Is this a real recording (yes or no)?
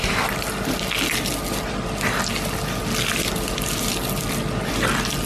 yes